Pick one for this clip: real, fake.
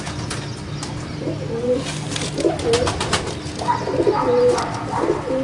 real